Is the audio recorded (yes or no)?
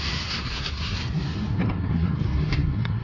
no